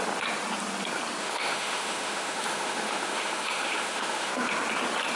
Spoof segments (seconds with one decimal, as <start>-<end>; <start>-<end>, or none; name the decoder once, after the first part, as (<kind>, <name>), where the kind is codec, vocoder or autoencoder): 1.2-4.3 (autoencoder, DAC-VAE)